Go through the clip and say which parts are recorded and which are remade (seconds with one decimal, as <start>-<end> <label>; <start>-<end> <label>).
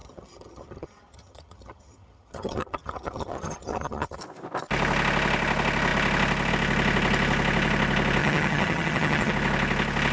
0.0-4.2 remade; 4.2-8.2 recorded; 8.2-9.3 remade; 9.3-10.1 recorded